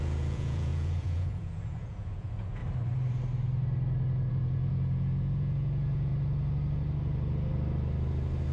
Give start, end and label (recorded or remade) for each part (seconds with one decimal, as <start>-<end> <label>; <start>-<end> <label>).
0.0-2.6 remade; 2.6-4.3 recorded; 4.3-6.1 remade; 6.1-8.5 recorded